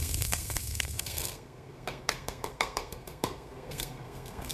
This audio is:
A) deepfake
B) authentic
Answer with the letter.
A